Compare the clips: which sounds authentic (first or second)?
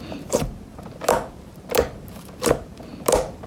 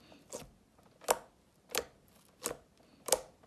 second